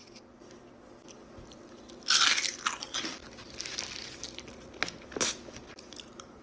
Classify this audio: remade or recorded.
recorded